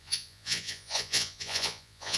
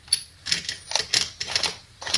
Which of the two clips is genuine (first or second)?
second